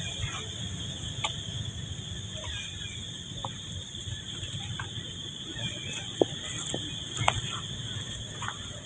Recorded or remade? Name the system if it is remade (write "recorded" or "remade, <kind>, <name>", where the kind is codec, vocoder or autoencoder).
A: recorded